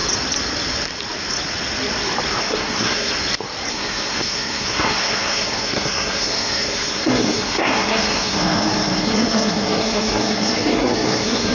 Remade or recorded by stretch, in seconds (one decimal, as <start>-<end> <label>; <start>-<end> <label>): 0.0-2.4 recorded; 2.4-3.1 remade; 3.1-3.7 recorded; 3.7-11.5 remade